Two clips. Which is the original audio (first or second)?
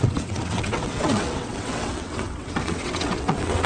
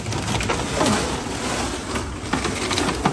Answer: second